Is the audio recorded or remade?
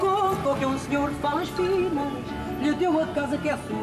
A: recorded